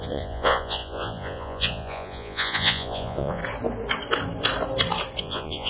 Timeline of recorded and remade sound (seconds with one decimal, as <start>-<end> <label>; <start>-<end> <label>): 0.0-3.4 remade; 3.4-5.2 recorded; 5.2-5.7 remade

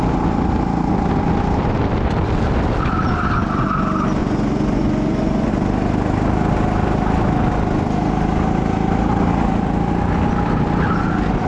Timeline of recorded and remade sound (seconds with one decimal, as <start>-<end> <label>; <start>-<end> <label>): 0.0-4.2 recorded; 4.2-5.5 remade; 5.5-11.5 recorded

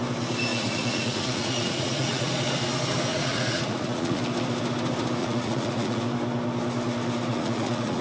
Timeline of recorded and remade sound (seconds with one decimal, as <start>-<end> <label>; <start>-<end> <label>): 0.0-0.5 recorded; 0.5-2.3 remade; 2.3-3.1 recorded; 3.1-4.2 remade; 4.2-5.2 recorded; 5.2-6.0 remade; 6.0-7.3 recorded; 7.3-8.0 remade

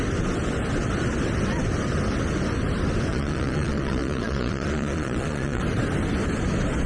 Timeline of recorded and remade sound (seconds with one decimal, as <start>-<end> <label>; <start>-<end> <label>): 0.0-3.1 recorded; 3.1-5.6 remade; 5.6-6.9 recorded